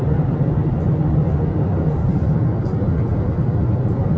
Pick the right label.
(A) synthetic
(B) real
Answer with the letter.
B